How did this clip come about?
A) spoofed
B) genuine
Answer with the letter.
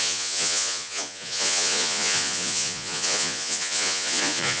A